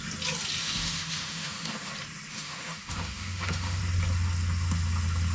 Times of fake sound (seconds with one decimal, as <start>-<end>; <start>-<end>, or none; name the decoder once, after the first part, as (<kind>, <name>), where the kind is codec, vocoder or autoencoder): 0.6-1.9 (autoencoder, DAC-VAE); 2.3-3.8